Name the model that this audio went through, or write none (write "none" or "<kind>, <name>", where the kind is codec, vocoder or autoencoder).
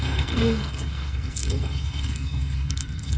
codec, SNAC